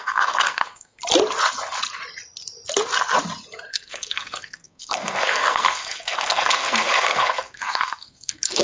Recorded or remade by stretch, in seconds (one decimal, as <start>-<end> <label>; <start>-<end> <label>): 0.0-1.0 remade; 1.0-3.7 recorded; 3.7-8.6 remade